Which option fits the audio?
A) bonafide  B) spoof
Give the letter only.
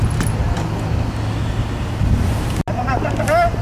A